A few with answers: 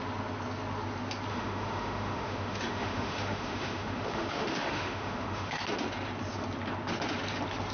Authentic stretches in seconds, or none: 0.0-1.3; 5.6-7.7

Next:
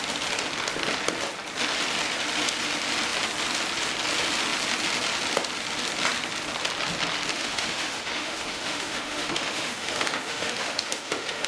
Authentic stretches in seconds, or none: 0.0-7.3